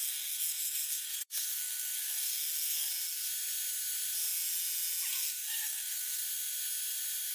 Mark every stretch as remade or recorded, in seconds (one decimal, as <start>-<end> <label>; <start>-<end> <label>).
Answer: 0.0-2.9 remade; 2.9-5.1 recorded; 5.1-6.2 remade; 6.2-7.3 recorded